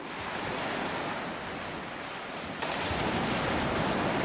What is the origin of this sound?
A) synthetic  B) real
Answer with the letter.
B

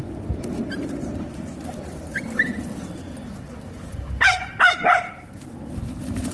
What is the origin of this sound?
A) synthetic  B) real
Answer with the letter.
B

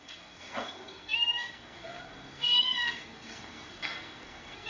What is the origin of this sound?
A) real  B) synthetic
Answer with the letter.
B